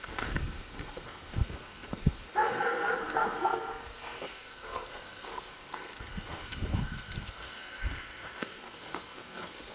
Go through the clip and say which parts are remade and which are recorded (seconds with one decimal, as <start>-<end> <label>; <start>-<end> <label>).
0.0-9.7 remade